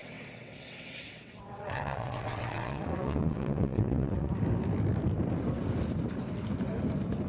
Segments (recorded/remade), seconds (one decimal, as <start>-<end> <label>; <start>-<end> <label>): 0.0-4.3 remade; 4.3-7.3 recorded